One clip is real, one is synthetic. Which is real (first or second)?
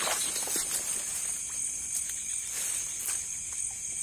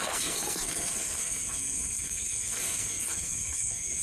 first